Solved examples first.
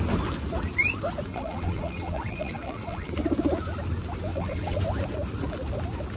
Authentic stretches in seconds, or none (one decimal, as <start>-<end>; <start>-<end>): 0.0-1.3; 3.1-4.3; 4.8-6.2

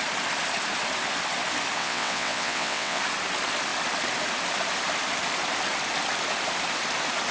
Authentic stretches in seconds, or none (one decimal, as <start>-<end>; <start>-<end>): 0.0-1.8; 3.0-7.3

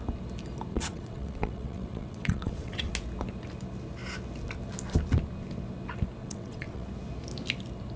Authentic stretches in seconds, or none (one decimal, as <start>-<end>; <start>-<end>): 0.0-0.7; 2.9-6.2; 6.9-8.0

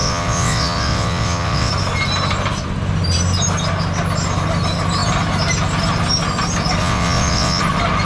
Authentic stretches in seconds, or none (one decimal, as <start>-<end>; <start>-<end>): 1.7-6.8; 7.6-8.1